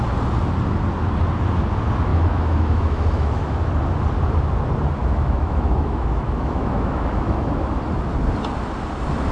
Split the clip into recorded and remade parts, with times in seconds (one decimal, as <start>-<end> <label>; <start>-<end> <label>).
0.0-2.1 recorded; 2.1-3.7 remade; 3.7-5.0 recorded; 5.0-7.6 remade; 7.6-9.3 recorded

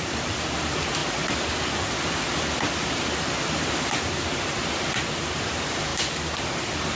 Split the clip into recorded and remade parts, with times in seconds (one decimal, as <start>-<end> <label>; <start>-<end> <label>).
0.0-1.0 remade; 1.0-4.9 recorded; 4.9-5.9 remade; 5.9-7.0 recorded

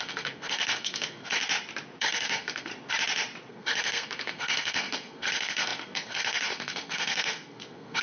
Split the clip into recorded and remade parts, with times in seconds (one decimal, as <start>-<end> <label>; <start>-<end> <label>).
0.0-1.4 remade; 1.4-2.0 recorded; 2.0-2.7 remade; 2.7-3.5 recorded; 3.5-8.0 remade

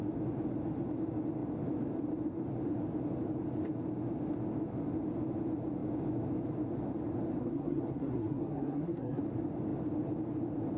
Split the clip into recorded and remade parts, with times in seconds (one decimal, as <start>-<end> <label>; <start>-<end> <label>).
0.0-7.4 recorded; 7.4-9.2 remade; 9.2-10.8 recorded

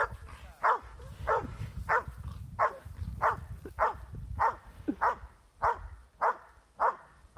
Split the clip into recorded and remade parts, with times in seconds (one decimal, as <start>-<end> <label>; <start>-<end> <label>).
0.0-7.4 recorded

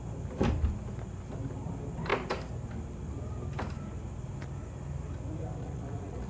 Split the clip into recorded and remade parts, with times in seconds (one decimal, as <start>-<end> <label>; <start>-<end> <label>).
0.0-5.6 recorded; 5.6-6.3 remade